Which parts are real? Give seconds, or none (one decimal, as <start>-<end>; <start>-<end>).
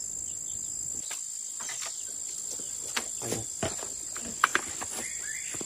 0.0-5.7